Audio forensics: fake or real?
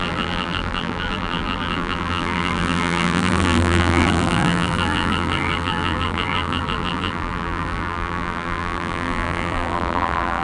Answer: fake